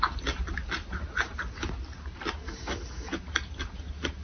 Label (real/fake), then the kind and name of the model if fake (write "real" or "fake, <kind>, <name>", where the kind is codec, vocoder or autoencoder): real